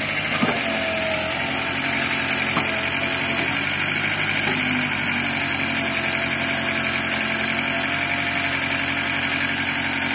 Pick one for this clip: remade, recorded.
recorded